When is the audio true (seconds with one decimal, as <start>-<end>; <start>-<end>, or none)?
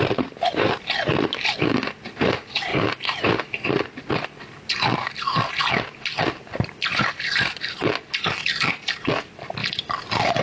0.0-10.4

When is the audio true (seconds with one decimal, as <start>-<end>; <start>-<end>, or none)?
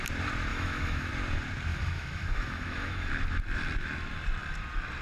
0.0-0.5; 1.1-1.7; 3.1-5.0